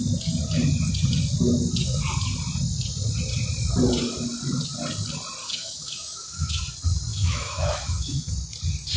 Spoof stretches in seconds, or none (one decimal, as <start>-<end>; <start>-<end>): 5.4-6.6; 7.1-8.3